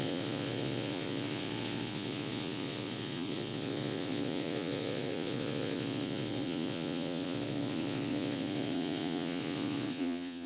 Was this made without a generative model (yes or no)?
no